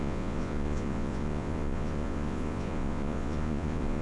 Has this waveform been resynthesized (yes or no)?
yes